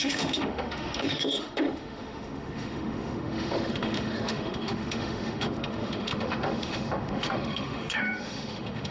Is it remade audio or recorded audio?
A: remade